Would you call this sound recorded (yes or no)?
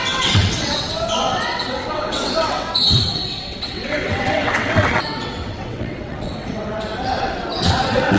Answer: no